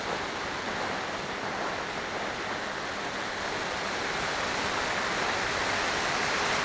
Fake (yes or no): no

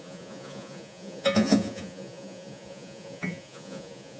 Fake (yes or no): yes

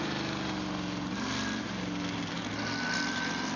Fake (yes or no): no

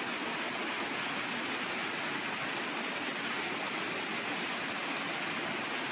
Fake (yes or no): no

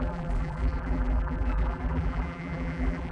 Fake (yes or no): yes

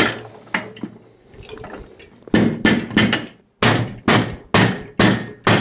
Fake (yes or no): no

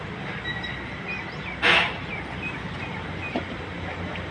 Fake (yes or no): no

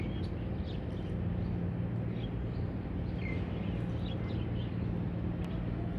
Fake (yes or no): no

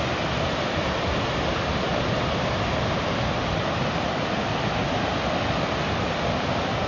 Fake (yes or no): no